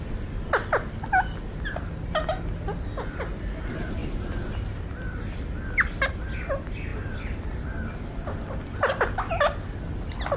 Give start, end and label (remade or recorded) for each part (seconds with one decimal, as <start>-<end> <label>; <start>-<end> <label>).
0.0-10.4 recorded